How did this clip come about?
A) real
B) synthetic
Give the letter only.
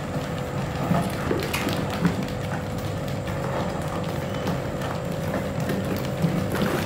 A